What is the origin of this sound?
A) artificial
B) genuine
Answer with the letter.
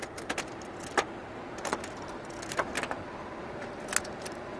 B